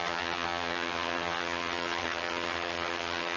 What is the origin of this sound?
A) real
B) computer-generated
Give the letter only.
B